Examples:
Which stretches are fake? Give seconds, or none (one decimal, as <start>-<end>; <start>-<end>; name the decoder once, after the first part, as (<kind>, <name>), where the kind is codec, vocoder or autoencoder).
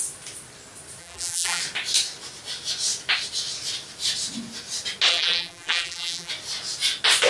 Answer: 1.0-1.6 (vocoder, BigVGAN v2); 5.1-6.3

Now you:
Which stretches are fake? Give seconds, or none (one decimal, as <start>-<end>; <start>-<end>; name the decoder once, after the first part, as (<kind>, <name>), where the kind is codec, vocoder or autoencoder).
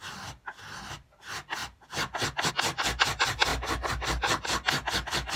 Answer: none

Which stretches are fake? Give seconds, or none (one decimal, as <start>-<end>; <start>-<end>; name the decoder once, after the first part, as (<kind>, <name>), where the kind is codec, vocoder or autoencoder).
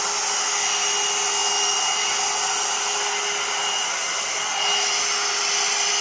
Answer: none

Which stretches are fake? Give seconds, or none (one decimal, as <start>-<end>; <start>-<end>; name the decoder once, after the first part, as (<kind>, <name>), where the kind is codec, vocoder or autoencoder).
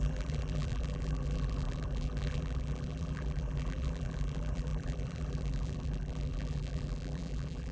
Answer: 0.0-7.7 (vocoder, BigVGAN v2)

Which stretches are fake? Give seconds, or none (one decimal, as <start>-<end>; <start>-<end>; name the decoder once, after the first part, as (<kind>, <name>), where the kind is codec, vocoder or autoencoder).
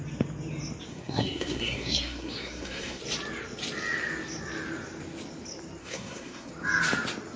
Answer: 0.9-3.0 (codec, SNAC); 5.8-6.5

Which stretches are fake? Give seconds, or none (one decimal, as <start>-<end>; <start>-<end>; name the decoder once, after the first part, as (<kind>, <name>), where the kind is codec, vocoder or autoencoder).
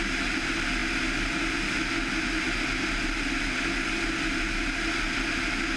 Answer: none